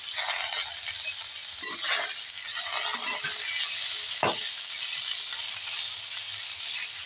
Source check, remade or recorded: recorded